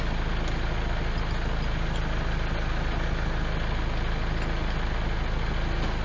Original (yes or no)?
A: yes